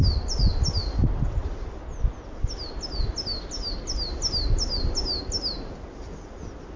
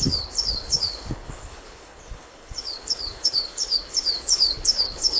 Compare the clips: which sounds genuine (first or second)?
first